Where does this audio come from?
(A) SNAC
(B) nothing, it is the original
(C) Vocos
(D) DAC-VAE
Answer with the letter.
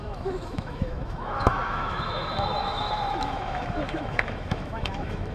D